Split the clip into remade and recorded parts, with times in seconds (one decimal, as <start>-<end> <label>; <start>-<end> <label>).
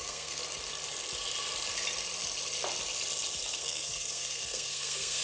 0.0-0.4 remade; 0.4-3.5 recorded; 3.5-5.2 remade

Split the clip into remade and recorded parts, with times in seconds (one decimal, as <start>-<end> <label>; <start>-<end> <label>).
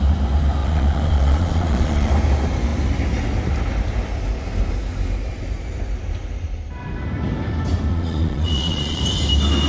0.0-0.6 recorded; 0.6-2.1 remade; 2.1-7.9 recorded; 7.9-9.0 remade; 9.0-9.7 recorded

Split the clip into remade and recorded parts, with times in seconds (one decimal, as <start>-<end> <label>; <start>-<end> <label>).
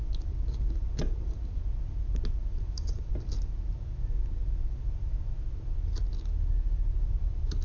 0.0-7.6 recorded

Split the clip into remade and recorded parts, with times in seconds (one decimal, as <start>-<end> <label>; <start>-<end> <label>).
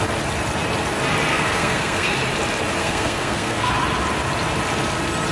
0.0-1.3 recorded; 1.3-2.1 remade; 2.1-2.8 recorded; 2.8-3.7 remade; 3.7-5.3 recorded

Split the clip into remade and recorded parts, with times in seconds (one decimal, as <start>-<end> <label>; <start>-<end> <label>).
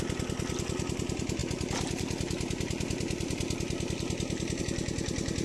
0.0-5.4 recorded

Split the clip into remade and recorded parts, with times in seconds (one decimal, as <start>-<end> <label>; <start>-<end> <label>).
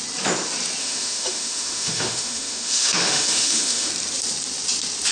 0.0-0.8 recorded; 0.8-3.9 remade; 3.9-5.1 recorded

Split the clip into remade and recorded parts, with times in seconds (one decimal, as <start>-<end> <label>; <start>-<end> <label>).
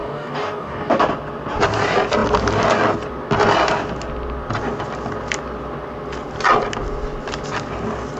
0.0-1.0 remade; 1.0-8.2 recorded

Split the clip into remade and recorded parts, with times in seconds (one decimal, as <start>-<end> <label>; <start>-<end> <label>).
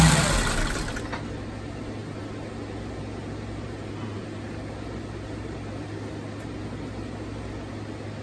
0.0-8.2 recorded